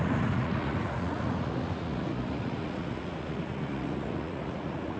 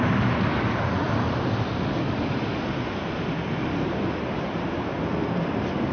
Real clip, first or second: second